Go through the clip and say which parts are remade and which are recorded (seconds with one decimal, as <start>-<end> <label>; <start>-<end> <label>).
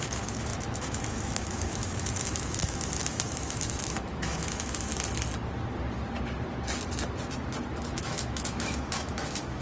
0.0-4.9 remade; 4.9-8.0 recorded; 8.0-9.6 remade